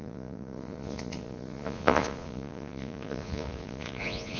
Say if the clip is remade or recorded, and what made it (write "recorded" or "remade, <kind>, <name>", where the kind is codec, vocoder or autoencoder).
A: remade, vocoder, Vocos